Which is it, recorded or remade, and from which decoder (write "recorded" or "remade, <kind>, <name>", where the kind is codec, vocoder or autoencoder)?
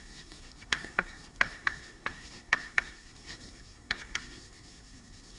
remade, codec, SNAC